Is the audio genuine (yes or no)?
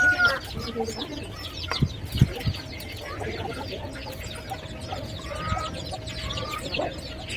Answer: yes